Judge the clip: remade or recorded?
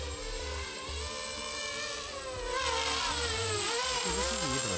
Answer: recorded